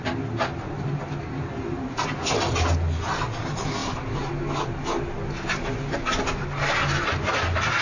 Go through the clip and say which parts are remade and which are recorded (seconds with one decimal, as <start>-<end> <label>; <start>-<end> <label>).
0.0-7.8 recorded

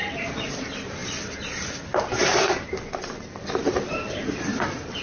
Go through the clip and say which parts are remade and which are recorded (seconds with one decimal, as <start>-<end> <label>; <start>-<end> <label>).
0.0-5.0 recorded